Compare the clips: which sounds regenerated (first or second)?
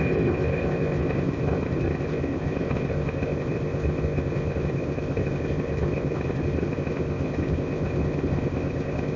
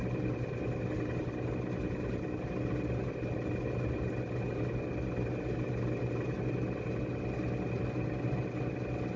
first